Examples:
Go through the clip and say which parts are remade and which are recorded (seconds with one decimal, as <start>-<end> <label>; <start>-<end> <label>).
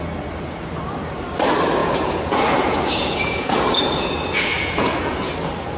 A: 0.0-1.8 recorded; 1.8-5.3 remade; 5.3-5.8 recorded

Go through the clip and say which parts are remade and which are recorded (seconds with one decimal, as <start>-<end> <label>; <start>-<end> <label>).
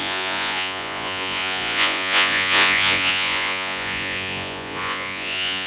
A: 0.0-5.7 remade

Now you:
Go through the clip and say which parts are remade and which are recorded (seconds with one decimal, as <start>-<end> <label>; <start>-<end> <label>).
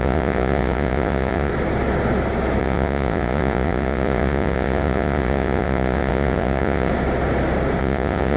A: 0.0-1.5 remade; 1.5-2.6 recorded; 2.6-6.9 remade; 6.9-7.8 recorded; 7.8-8.4 remade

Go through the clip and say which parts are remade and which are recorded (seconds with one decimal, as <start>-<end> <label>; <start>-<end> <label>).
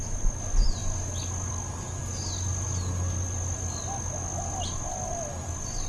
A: 0.0-5.9 recorded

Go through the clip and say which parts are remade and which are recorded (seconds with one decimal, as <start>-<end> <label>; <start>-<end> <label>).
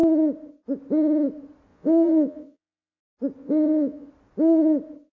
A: 0.0-1.7 recorded; 1.7-3.0 remade; 3.0-3.4 recorded; 3.4-4.1 remade; 4.1-5.2 recorded